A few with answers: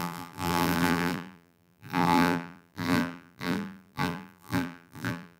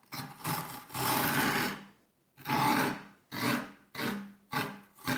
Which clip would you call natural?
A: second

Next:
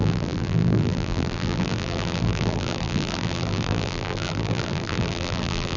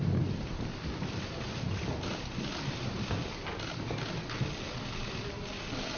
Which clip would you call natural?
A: second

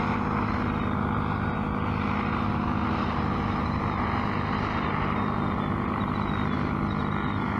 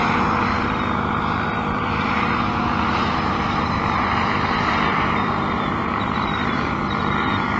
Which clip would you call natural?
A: first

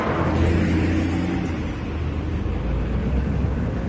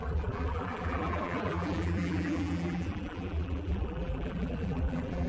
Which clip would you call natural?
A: first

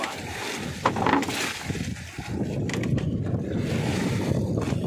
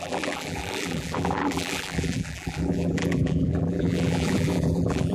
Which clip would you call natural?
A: first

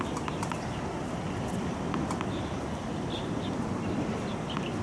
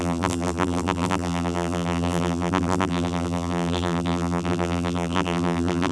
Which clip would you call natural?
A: first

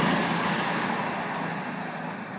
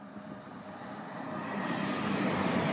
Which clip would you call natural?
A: first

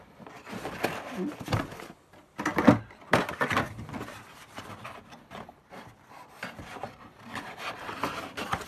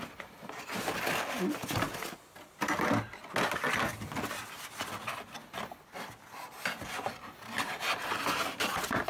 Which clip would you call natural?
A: second